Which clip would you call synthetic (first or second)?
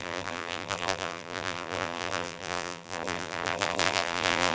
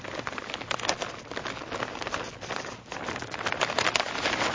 first